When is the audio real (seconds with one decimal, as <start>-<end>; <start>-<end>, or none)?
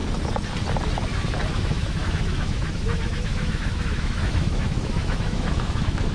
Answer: 0.0-1.5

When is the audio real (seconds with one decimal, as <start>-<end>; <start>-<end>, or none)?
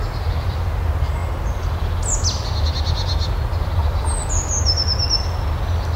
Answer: 0.0-6.0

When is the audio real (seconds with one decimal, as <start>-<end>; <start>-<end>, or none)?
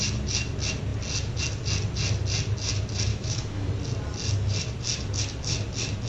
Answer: 0.0-3.1; 3.7-6.1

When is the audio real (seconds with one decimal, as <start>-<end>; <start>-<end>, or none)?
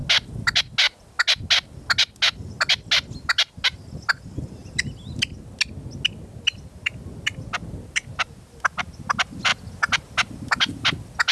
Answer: 0.0-11.3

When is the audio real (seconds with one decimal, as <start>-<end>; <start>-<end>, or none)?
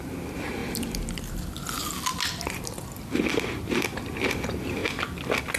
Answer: 0.0-5.6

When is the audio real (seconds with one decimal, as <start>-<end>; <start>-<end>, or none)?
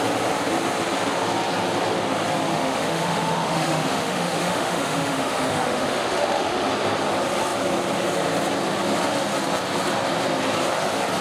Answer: 0.0-2.5; 6.7-11.2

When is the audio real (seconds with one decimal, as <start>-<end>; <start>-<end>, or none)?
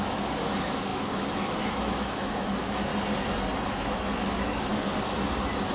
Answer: 2.9-3.7; 4.7-5.7